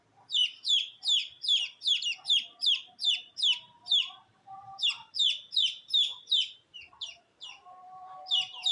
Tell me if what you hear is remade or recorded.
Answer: remade